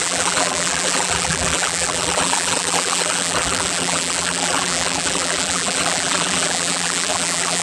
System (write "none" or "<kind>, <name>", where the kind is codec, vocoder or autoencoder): vocoder, BigVGAN v2